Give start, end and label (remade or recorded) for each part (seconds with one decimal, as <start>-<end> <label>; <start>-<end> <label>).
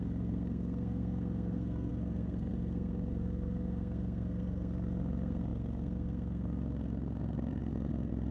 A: 0.0-8.3 remade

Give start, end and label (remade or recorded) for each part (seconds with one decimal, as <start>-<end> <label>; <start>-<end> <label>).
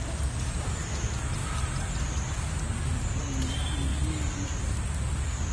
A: 0.0-5.5 recorded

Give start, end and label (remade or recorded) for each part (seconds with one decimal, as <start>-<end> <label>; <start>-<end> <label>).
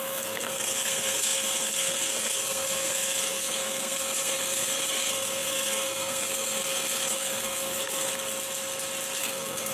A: 0.0-8.1 remade; 8.1-9.2 recorded; 9.2-9.7 remade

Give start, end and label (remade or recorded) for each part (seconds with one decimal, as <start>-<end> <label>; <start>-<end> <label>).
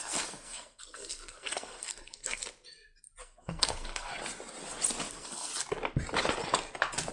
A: 0.0-2.4 remade; 2.4-3.2 recorded; 3.2-4.1 remade; 4.1-5.1 recorded; 5.1-5.5 remade; 5.5-7.1 recorded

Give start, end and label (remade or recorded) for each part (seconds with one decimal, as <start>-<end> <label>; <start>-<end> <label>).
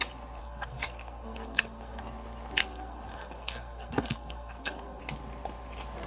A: 0.0-0.4 recorded; 0.4-2.0 remade; 2.0-2.6 recorded; 2.6-5.0 remade; 5.0-6.1 recorded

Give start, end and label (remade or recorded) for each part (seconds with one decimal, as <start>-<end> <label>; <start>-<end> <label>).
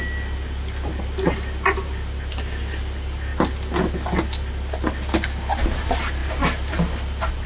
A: 0.0-7.5 recorded